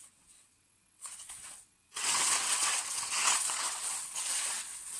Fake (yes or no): yes